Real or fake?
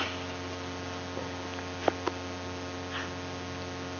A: real